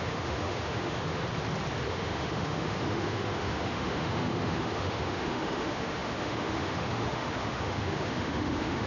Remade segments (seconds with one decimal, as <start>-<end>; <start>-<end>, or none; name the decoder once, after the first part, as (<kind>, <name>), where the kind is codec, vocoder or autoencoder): 0.0-1.2 (autoencoder, DAC-VAE); 1.9-8.9